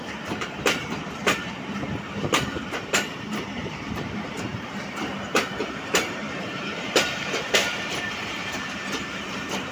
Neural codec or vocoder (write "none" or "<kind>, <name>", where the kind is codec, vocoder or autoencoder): vocoder, BigVGAN v2